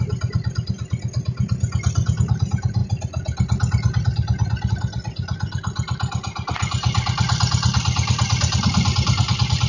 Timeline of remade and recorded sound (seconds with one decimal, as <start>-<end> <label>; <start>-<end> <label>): 0.0-9.7 recorded